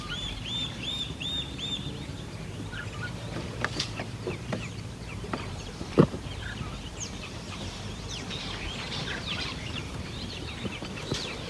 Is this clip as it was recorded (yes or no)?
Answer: no